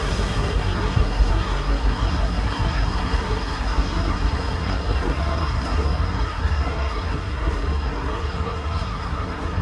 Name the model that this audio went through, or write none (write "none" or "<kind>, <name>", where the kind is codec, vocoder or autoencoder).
codec, SNAC